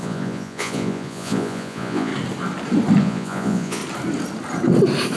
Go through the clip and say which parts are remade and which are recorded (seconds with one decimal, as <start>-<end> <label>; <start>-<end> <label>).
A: 0.0-2.1 remade; 2.1-3.0 recorded; 3.0-3.8 remade; 3.8-5.2 recorded